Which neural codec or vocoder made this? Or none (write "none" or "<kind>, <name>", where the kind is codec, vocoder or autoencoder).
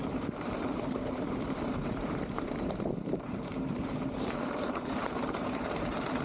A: vocoder, BigVGAN v2